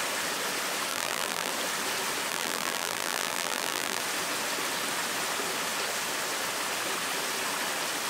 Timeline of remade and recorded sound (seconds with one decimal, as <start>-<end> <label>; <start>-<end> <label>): 0.0-0.9 recorded; 0.9-1.5 remade; 1.5-2.3 recorded; 2.3-4.0 remade; 4.0-8.1 recorded